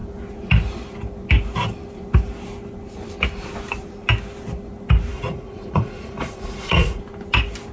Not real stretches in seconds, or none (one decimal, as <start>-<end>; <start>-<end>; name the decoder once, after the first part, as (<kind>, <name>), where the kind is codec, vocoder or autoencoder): 5.1-7.0 (vocoder, Vocos)